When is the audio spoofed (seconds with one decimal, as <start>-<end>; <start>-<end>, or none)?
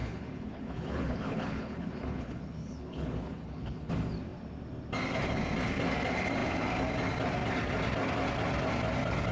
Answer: 0.0-3.9